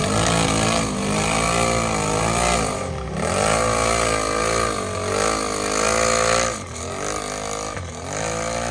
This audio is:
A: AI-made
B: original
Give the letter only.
B